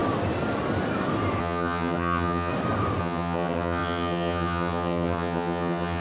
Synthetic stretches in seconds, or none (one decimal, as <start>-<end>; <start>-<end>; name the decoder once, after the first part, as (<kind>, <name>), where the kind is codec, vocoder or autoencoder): 1.4-2.5 (vocoder, HiFi-GAN); 3.0-6.0